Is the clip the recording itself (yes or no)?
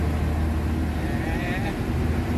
yes